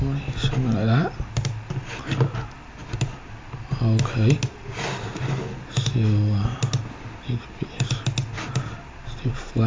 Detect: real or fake real